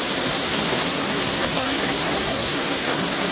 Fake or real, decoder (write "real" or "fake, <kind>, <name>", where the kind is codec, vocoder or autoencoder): fake, codec, SNAC